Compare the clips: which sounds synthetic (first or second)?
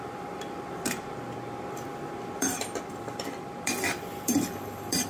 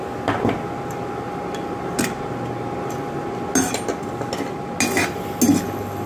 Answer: first